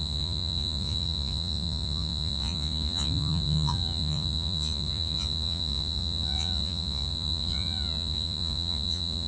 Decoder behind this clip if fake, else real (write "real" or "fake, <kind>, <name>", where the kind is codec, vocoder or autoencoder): fake, vocoder, Vocos